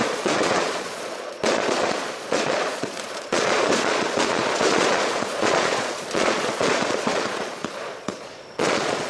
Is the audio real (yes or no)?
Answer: no